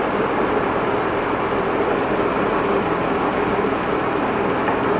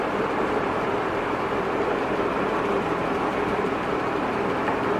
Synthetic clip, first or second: second